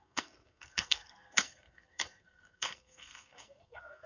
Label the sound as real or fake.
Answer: fake